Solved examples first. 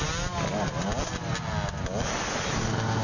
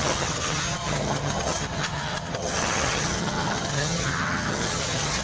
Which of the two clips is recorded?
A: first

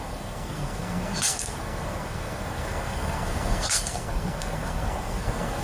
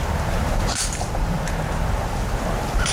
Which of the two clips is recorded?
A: second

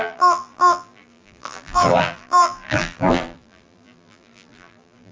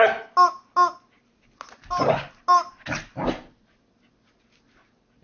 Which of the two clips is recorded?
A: second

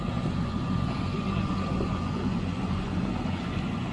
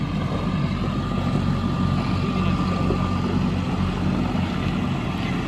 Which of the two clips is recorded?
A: second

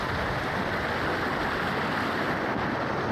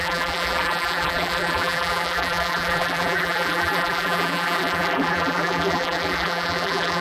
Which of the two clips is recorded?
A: first